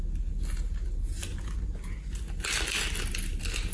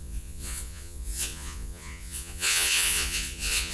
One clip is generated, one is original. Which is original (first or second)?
first